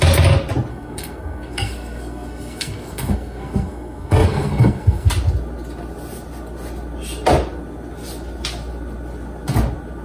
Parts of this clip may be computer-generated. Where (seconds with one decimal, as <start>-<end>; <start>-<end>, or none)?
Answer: 0.7-5.1

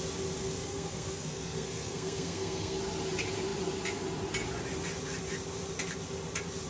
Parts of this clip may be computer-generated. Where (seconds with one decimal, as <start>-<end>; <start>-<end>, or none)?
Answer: 0.4-2.8

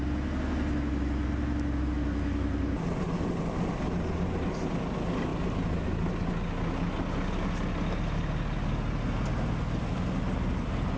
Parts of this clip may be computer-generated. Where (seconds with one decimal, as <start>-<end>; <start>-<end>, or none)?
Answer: none

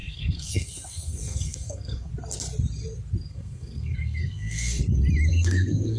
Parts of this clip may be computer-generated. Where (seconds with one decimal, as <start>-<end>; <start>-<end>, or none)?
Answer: 0.0-2.1; 3.3-4.8; 5.3-6.0

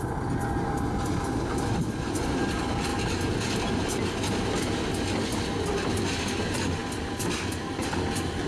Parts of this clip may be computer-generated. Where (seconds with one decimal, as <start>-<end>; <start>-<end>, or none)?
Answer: none